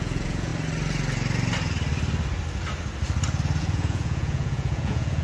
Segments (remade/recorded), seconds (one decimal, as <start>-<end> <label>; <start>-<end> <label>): 0.0-0.5 remade; 0.5-3.6 recorded; 3.6-5.2 remade